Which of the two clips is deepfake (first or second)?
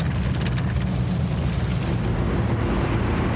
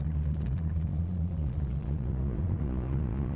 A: second